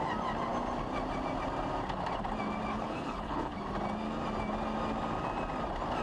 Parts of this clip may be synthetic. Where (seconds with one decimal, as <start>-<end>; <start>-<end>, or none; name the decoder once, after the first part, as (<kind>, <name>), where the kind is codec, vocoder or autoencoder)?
2.7-3.5 (codec, HILCodec)